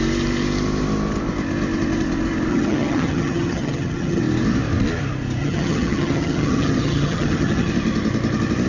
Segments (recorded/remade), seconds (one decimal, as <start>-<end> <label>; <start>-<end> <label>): 0.0-2.5 recorded; 2.5-4.2 remade; 4.2-5.4 recorded; 5.4-7.7 remade; 7.7-8.7 recorded